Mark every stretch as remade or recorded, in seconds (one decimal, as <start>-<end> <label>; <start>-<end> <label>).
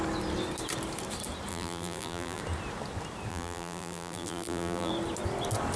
0.0-1.5 recorded; 1.5-2.4 remade; 2.4-3.3 recorded; 3.3-4.9 remade; 4.9-5.8 recorded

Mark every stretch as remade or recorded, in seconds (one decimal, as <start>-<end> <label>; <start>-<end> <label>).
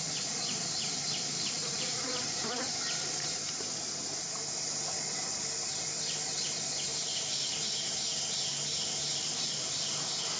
0.0-1.6 recorded; 1.6-3.8 remade; 3.8-9.1 recorded; 9.1-9.9 remade; 9.9-10.4 recorded